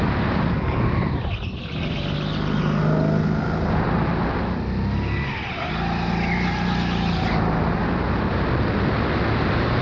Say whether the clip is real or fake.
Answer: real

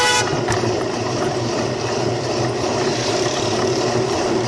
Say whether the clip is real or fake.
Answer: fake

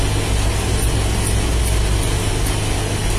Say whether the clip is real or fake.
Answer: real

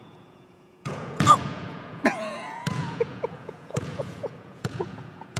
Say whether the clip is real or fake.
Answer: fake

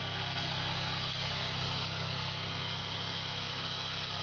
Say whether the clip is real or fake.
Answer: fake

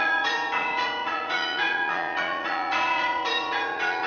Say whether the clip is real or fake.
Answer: fake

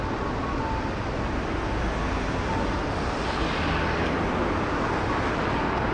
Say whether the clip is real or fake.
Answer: real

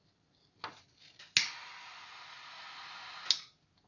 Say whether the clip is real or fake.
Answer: real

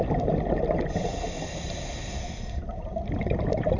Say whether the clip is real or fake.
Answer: real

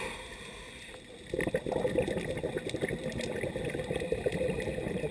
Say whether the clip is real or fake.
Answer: real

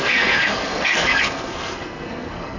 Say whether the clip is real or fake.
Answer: fake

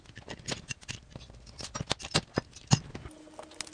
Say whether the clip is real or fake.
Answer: real